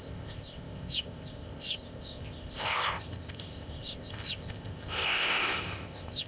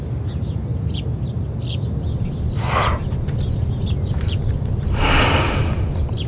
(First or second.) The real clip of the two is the second